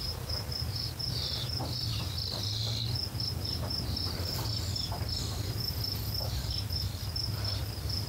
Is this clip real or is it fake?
fake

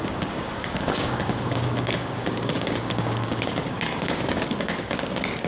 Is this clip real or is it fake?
fake